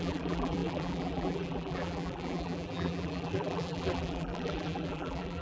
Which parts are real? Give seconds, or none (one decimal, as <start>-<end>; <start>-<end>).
none